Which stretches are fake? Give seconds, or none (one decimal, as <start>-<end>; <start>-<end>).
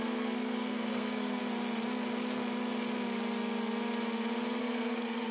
0.0-1.4; 4.6-5.3